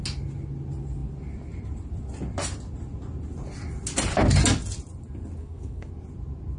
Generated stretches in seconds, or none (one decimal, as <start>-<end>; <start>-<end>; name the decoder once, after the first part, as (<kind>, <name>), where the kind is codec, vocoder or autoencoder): 5.4-5.9 (codec, SNAC)